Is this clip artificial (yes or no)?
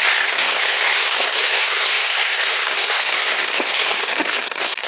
yes